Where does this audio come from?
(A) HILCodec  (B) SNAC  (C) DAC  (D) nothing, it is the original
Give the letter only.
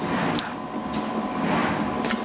D